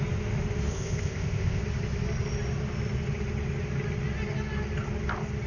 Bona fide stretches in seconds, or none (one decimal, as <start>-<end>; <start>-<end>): 0.0-0.7; 1.6-5.5